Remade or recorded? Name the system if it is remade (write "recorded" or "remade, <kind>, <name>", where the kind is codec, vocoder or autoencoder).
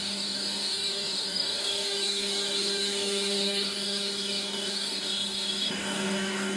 remade, codec, DAC